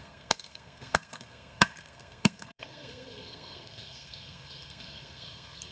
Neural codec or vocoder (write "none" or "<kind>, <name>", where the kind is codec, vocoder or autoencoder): codec, SNAC